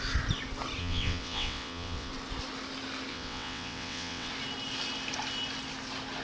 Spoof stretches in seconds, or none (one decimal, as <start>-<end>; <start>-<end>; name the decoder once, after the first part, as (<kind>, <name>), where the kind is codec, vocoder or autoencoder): 0.8-2.1 (vocoder, WaveNeXt); 3.1-4.3